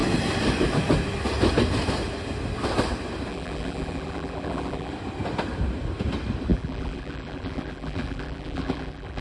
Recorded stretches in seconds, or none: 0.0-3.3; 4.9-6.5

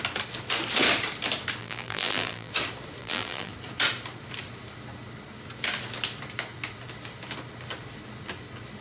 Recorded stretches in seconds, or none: 0.0-1.6; 2.5-3.0; 3.5-8.8

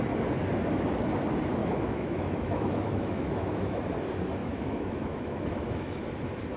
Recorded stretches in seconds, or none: 0.0-1.6; 3.8-4.4; 6.0-6.6